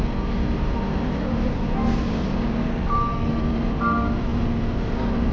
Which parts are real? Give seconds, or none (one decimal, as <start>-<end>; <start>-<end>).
0.0-2.7; 3.4-5.3